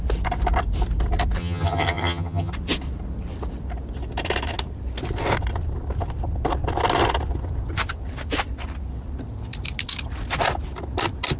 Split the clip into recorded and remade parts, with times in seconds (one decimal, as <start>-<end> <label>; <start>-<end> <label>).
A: 0.0-1.4 recorded; 1.4-2.5 remade; 2.5-11.4 recorded